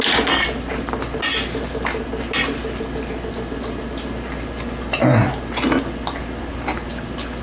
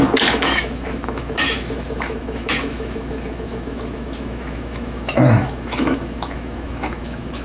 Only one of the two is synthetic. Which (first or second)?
second